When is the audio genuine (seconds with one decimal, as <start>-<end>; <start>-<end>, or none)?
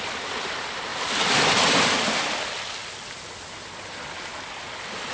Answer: 0.0-0.9; 1.8-5.1